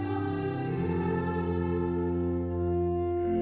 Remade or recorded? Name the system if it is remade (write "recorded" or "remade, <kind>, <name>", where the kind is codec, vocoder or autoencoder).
recorded